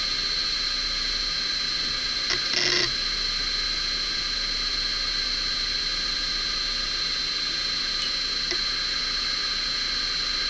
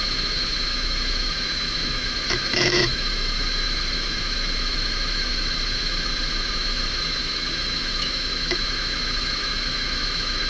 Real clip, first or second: first